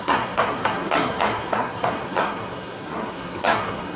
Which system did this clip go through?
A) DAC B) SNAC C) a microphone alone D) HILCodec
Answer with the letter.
B